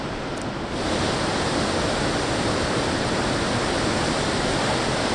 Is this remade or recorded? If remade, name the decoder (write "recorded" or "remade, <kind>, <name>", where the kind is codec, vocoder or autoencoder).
recorded